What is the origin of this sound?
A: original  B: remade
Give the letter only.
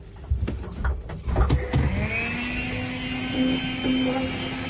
A